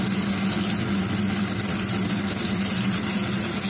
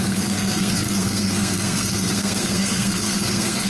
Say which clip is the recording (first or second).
first